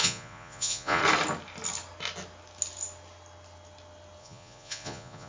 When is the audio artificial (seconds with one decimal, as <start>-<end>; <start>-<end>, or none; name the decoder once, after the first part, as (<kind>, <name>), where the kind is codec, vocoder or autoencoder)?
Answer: 0.0-1.0 (vocoder, Vocos); 4.2-5.3